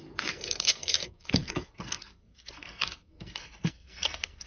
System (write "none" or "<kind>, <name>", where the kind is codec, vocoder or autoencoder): codec, SNAC